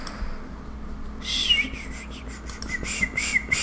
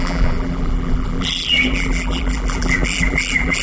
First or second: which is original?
first